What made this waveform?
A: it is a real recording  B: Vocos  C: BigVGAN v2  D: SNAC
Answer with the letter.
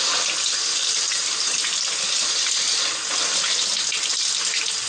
A